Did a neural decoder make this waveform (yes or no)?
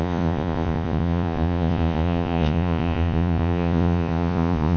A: yes